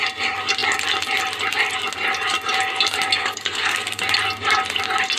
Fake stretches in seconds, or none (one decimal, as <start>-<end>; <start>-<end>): 3.2-4.0

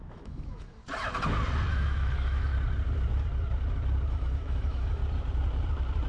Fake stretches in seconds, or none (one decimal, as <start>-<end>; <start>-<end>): 0.0-0.8; 1.7-2.5; 4.1-5.0

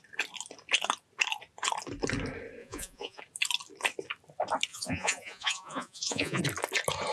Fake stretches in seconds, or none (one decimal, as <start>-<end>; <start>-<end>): 2.6-3.2; 4.7-6.4

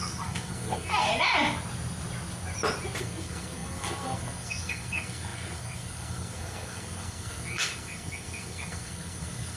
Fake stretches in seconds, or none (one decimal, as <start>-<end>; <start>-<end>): 0.0-1.1; 3.0-9.6

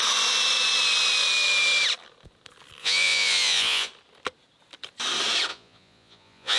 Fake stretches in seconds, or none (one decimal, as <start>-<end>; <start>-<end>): 2.8-3.9; 5.5-6.6

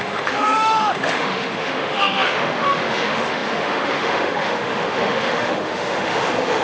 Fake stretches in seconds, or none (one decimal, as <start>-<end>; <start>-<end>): 0.0-6.6

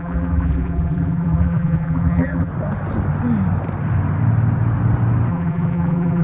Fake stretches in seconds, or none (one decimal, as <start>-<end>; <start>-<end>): 0.0-2.5; 5.3-6.2

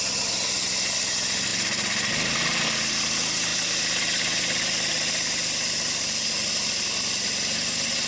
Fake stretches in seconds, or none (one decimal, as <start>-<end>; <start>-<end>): none